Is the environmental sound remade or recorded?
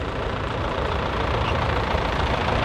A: remade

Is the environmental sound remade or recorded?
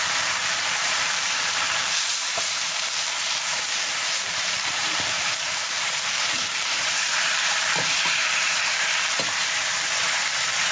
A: remade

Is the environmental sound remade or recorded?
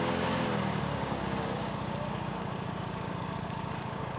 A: remade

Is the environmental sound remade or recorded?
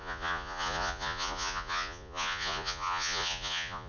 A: remade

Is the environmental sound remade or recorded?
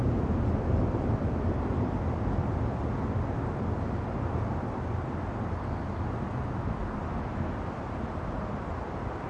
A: recorded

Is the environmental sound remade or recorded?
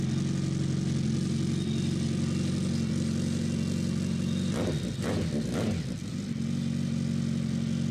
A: recorded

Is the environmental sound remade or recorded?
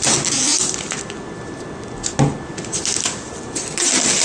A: recorded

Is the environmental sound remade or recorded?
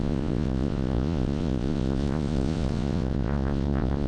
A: remade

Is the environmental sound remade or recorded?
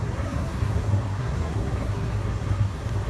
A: remade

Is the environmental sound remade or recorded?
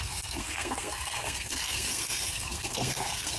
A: remade